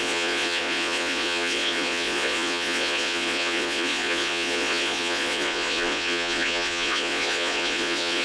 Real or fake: fake